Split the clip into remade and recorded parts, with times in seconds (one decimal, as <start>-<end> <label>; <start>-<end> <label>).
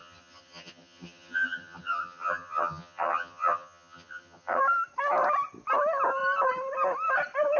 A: 0.0-4.6 remade; 4.6-7.6 recorded